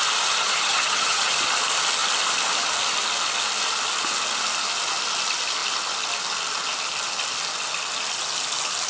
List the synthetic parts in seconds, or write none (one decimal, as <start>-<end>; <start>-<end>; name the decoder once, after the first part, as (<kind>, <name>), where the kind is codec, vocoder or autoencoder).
0.4-1.3 (vocoder, HiFi-GAN)